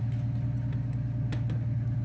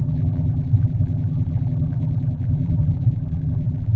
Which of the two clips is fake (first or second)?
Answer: second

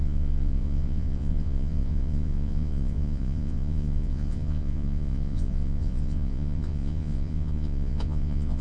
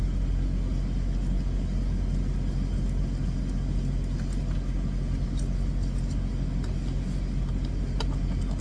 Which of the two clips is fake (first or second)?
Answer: first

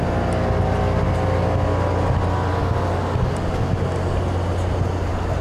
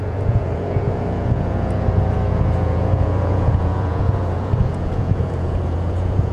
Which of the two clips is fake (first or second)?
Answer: second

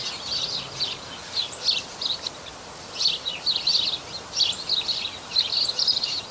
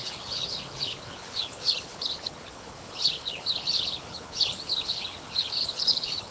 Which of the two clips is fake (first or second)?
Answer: second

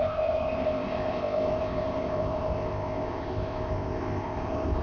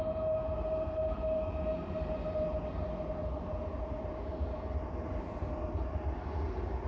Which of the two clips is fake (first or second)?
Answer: first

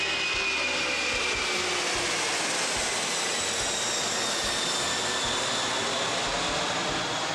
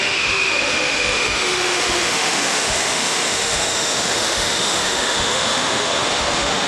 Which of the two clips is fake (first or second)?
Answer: second